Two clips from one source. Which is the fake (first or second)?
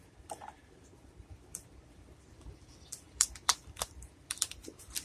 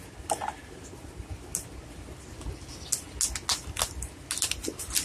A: first